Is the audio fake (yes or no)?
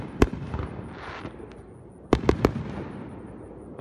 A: no